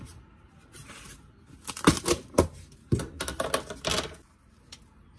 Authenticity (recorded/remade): recorded